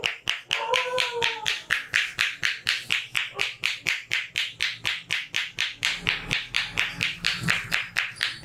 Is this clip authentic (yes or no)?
yes